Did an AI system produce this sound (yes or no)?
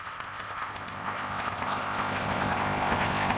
yes